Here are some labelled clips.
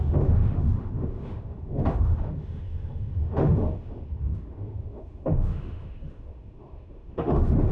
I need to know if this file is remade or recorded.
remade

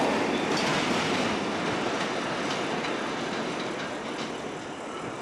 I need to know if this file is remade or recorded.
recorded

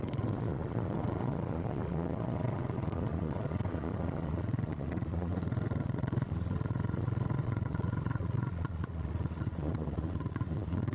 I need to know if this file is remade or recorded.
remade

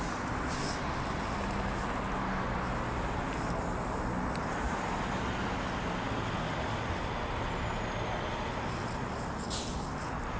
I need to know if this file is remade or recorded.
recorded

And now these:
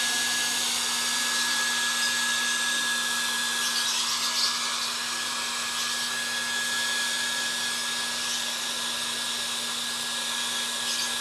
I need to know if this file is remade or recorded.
recorded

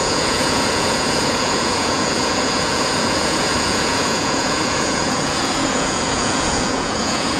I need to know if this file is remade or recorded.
remade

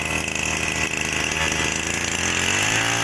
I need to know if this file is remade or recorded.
recorded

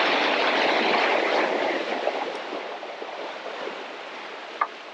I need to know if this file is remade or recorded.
recorded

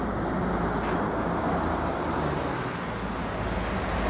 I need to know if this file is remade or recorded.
recorded